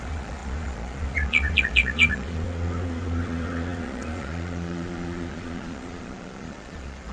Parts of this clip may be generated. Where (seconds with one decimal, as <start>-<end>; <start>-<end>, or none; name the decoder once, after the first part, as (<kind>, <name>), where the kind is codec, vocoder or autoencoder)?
0.0-7.1 (vocoder, Vocos)